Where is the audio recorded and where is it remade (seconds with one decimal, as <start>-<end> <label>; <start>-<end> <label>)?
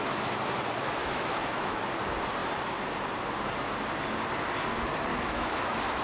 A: 0.0-1.0 recorded; 1.0-1.8 remade; 1.8-5.1 recorded; 5.1-6.0 remade